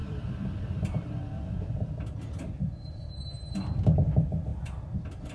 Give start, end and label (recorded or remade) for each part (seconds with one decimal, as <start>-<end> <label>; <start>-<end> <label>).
0.0-3.2 remade; 3.2-5.3 recorded